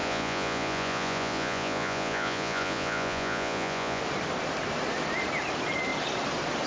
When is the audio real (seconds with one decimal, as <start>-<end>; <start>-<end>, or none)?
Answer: 4.0-6.7